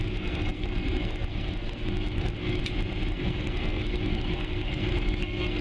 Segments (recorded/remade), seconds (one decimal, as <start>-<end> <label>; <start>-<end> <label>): 0.0-2.6 remade; 2.6-3.1 recorded; 3.1-5.6 remade